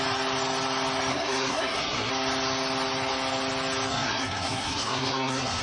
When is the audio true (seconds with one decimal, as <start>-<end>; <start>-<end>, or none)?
0.0-1.1; 2.1-3.9